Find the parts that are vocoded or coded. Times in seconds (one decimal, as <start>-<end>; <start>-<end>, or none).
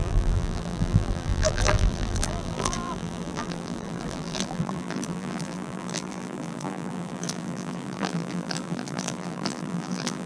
0.0-10.3